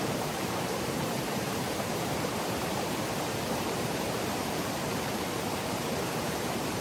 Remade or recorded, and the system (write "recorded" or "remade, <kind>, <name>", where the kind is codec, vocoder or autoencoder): remade, vocoder, BigVGAN v2